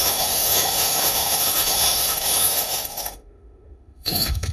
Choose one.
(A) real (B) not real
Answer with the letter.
B